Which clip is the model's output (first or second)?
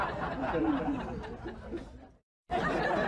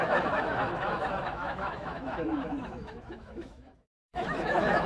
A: second